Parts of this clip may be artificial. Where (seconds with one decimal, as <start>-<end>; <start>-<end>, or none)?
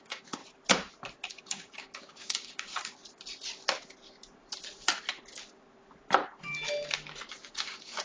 0.0-0.4; 1.4-3.0; 7.3-8.0